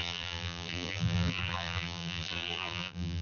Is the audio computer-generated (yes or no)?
yes